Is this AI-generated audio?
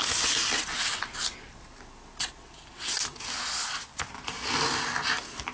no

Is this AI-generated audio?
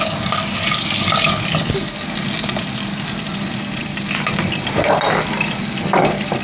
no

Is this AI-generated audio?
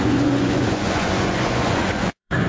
yes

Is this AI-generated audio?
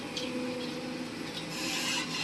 no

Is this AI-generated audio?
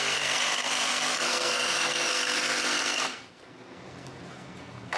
yes